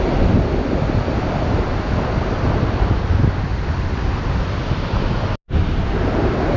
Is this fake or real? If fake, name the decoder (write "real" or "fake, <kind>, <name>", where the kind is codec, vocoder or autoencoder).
real